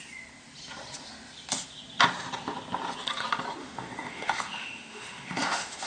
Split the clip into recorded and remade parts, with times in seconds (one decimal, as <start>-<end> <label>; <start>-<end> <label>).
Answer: 0.0-3.6 recorded; 3.6-5.9 remade